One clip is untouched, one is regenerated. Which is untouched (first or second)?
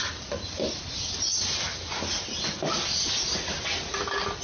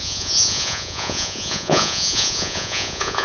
first